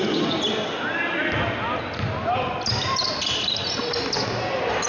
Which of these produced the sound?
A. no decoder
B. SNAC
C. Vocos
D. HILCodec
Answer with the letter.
A